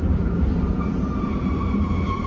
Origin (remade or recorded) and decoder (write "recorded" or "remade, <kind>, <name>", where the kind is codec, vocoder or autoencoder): remade, vocoder, BigVGAN v2